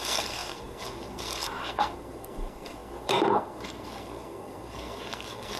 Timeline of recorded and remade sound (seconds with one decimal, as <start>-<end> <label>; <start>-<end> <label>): 0.0-5.6 remade